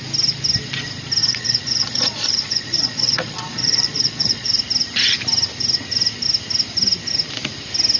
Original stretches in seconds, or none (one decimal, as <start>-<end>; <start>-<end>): 0.0-1.2; 4.6-8.0